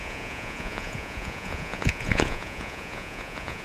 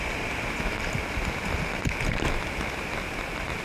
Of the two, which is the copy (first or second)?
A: first